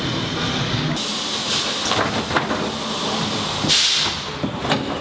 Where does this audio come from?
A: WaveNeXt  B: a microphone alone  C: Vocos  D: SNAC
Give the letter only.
B